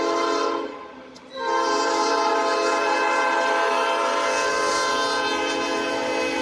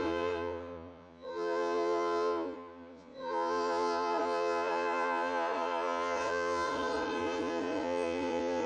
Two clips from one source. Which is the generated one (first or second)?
second